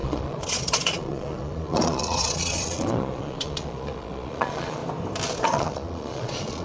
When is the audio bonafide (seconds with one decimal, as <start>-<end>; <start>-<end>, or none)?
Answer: 4.8-5.4